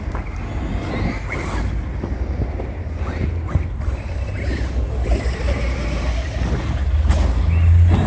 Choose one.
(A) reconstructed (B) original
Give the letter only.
B